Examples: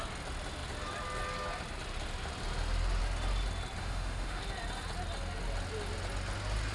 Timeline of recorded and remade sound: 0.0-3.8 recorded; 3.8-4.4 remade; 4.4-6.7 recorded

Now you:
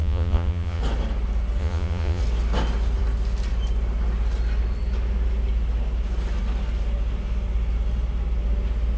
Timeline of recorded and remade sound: 0.0-0.8 remade; 0.8-1.6 recorded; 1.6-2.2 remade; 2.2-9.0 recorded